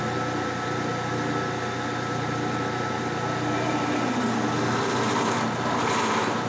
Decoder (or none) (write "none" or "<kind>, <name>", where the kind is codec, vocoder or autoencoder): none